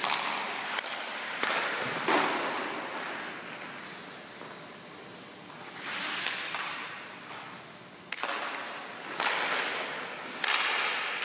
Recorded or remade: recorded